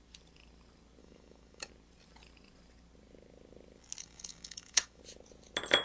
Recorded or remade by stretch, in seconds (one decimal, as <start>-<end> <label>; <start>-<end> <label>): 0.0-1.0 recorded; 1.0-1.7 remade; 1.7-4.0 recorded; 4.0-5.0 remade; 5.0-5.8 recorded